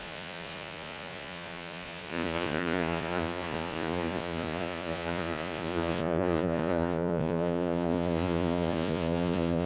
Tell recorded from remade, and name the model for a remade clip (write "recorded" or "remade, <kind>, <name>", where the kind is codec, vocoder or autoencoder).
remade, vocoder, Vocos